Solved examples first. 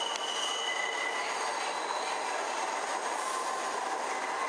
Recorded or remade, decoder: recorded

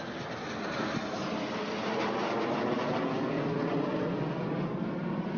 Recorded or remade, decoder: recorded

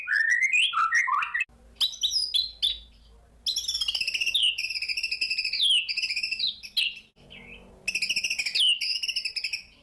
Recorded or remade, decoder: recorded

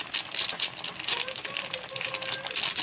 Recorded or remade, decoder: recorded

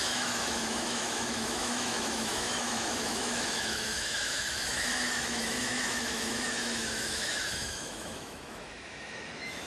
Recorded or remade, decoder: remade, autoencoder, DAC-VAE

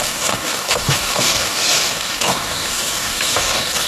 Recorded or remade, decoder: remade, codec, DAC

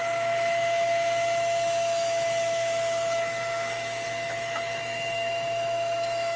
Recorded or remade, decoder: remade, autoencoder, DAC-VAE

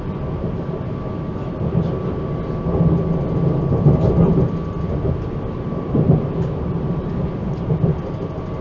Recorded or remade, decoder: recorded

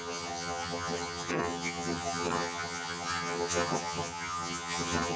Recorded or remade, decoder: remade, vocoder, HiFi-GAN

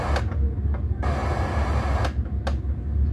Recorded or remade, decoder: recorded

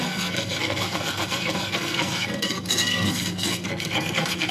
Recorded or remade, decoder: remade, codec, SNAC